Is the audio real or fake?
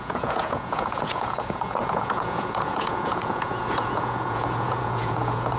fake